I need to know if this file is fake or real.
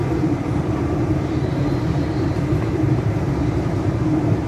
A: fake